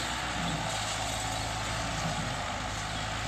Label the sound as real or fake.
real